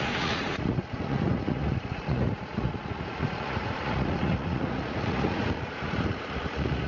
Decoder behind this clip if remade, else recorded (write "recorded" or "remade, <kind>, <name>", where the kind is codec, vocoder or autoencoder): remade, vocoder, Vocos